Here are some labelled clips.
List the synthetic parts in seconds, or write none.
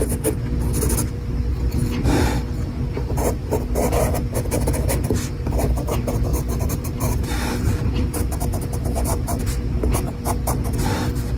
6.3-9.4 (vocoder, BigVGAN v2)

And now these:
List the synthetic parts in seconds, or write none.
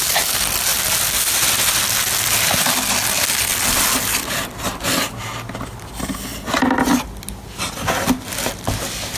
none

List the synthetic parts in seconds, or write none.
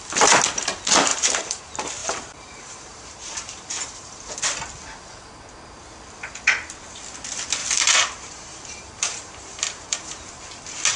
1.1-1.6 (vocoder, BigVGAN v2); 2.0-4.4; 7.6-10.3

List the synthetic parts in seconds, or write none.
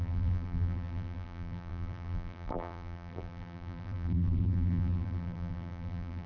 0.0-6.3 (vocoder, BigVGAN v2)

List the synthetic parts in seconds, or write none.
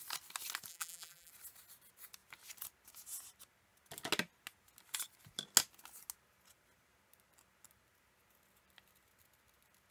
0.7-1.3 (vocoder, BigVGAN v2)